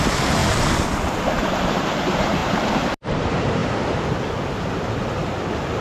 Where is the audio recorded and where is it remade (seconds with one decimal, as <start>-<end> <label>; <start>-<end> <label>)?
0.0-3.6 remade; 3.6-4.4 recorded; 4.4-5.8 remade